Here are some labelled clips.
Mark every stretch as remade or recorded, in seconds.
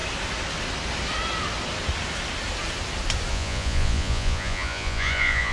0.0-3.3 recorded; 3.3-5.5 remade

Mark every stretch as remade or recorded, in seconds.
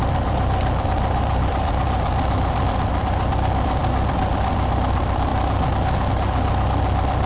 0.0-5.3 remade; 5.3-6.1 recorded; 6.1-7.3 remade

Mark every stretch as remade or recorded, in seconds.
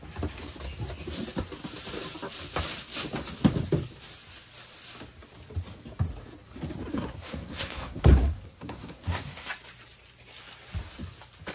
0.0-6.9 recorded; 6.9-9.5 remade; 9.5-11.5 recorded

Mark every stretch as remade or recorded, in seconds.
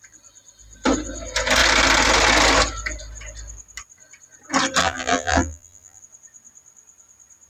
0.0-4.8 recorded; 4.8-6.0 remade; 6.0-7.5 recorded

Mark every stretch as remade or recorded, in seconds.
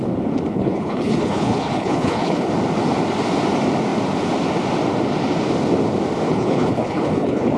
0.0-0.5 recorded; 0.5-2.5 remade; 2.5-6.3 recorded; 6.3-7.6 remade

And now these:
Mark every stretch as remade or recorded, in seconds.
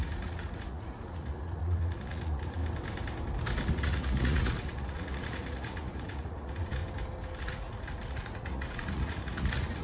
0.0-2.6 remade; 2.6-3.7 recorded; 3.7-6.8 remade; 6.8-7.4 recorded; 7.4-9.8 remade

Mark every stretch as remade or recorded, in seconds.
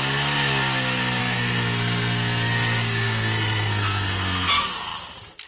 0.0-1.2 recorded; 1.2-4.5 remade; 4.5-5.5 recorded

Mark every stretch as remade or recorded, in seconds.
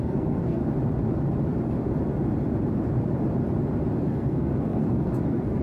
0.0-0.6 remade; 0.6-4.0 recorded; 4.0-5.6 remade